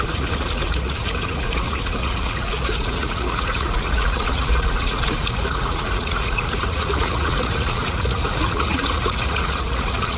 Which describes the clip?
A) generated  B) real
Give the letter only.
A